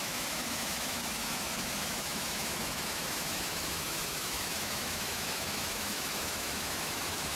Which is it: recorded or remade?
remade